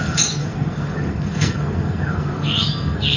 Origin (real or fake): fake